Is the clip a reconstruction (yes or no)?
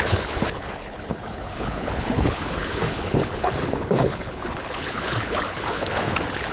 yes